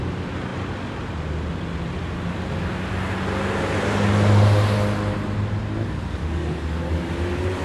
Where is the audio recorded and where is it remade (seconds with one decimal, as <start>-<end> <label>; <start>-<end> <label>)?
0.0-6.2 recorded; 6.2-7.1 remade; 7.1-7.6 recorded

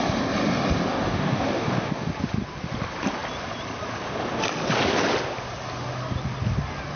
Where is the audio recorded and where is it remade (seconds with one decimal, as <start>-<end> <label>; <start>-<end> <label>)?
0.0-0.9 recorded; 0.9-2.1 remade; 2.1-7.0 recorded